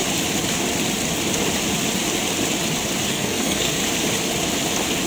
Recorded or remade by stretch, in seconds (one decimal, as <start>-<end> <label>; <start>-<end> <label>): 0.0-3.1 recorded; 3.1-3.8 remade; 3.8-5.1 recorded

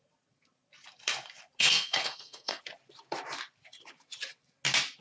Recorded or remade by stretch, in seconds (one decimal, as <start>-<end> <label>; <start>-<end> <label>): 0.0-1.6 recorded; 1.6-2.6 remade; 2.6-5.0 recorded

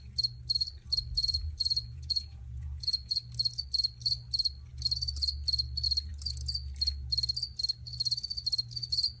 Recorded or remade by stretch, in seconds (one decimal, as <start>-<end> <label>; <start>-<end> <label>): 0.0-1.2 recorded; 1.2-3.2 remade; 3.2-9.2 recorded

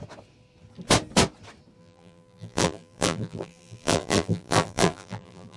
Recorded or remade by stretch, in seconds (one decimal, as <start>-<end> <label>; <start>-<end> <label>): 0.0-1.8 recorded; 1.8-5.6 remade

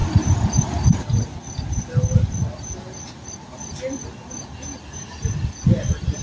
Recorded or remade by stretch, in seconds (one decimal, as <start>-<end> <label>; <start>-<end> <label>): 0.0-6.2 recorded

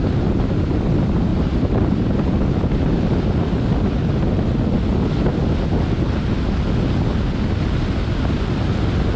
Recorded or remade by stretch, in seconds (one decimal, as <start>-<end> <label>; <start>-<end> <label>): 0.0-1.3 recorded; 1.3-2.1 remade; 2.1-9.2 recorded